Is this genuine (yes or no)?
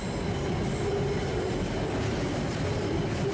yes